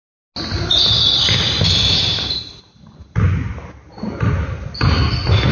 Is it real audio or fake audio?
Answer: real